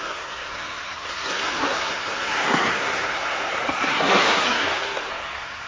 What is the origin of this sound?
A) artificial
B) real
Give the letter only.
A